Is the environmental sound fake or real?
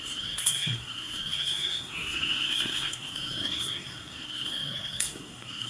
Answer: fake